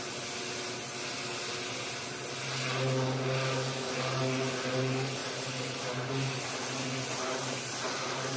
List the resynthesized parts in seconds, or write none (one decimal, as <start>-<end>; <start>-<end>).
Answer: none